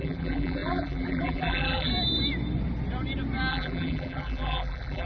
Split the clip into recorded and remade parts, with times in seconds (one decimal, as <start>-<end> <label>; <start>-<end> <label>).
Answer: 0.0-1.9 remade; 1.9-3.5 recorded; 3.5-5.1 remade